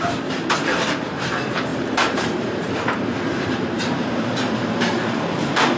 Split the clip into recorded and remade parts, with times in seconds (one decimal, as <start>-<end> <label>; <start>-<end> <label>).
0.0-5.8 remade